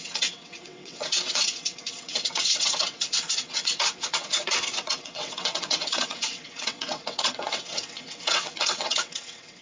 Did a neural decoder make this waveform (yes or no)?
yes